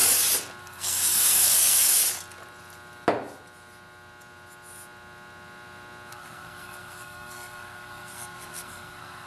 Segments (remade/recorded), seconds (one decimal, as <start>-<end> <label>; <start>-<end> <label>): 0.0-0.6 recorded; 0.6-2.0 remade; 2.0-6.1 recorded; 6.1-9.3 remade